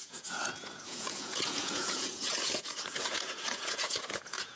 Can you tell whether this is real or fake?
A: fake